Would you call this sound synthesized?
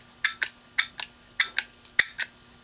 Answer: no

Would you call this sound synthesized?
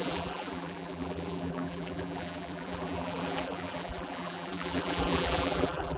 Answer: yes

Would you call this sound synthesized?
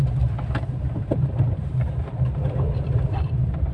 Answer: yes